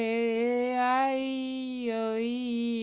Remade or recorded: recorded